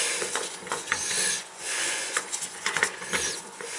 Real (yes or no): no